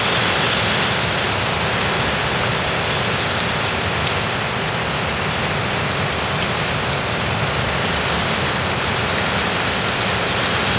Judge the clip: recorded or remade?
recorded